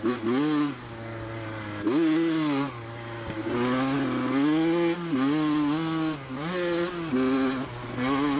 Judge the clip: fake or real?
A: real